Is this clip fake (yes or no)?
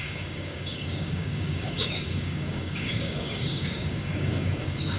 yes